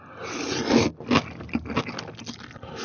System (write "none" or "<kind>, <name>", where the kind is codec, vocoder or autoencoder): none